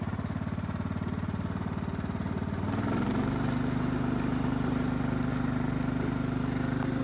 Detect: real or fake real